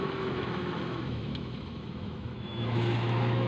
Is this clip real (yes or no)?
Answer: no